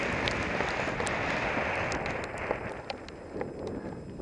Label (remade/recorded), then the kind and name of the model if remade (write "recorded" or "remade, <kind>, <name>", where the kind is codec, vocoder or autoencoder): recorded